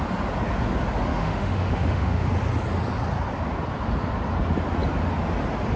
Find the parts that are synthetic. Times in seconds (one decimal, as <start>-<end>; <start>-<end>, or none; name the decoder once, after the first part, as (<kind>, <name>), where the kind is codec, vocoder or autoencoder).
1.1-2.3 (autoencoder, DAC-VAE)